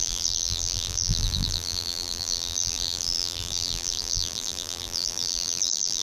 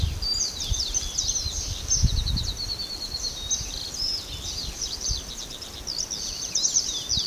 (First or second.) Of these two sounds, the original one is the second